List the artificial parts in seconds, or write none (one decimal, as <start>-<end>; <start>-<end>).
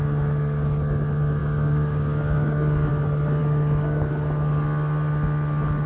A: 1.4-2.9; 3.4-4.1